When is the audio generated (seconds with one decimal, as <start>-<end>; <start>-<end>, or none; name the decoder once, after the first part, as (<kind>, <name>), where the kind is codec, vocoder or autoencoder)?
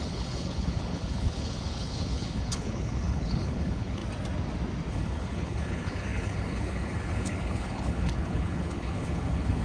0.0-4.0 (codec, HILCodec); 4.9-9.6